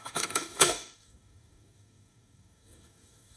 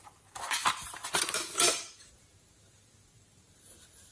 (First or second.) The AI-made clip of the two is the first